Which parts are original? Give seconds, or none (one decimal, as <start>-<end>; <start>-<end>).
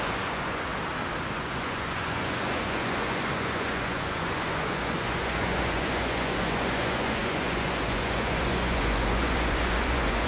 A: 0.7-1.3